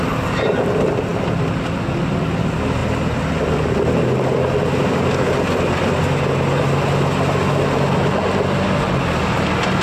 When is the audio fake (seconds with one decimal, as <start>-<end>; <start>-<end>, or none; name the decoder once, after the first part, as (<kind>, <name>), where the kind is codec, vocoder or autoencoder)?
none